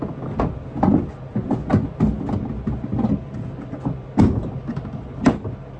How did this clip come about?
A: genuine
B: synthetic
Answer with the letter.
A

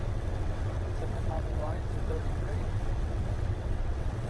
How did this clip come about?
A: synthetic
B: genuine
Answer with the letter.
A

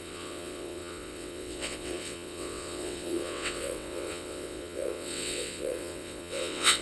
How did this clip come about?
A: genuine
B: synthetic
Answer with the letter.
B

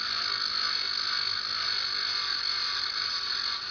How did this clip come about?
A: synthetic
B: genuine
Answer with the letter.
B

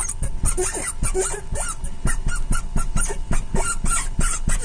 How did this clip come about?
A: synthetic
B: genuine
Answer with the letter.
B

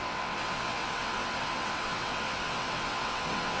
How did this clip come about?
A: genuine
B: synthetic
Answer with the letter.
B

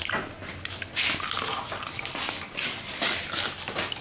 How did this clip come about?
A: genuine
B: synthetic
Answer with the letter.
A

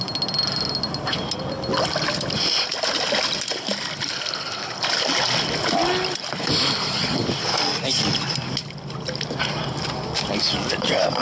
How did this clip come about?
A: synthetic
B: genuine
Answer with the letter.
B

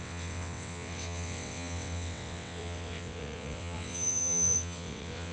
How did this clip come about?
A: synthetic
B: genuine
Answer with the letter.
A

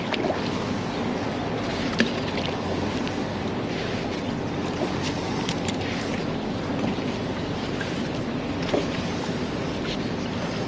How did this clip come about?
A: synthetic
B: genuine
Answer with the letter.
B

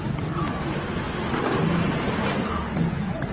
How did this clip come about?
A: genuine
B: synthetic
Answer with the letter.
A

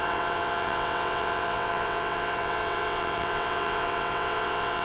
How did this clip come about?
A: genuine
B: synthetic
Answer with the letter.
B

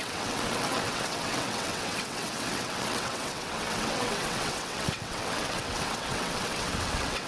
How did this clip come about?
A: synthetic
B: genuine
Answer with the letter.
A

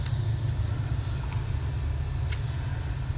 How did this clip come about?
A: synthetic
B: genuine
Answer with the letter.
B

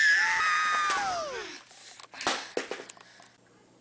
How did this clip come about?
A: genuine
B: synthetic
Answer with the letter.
A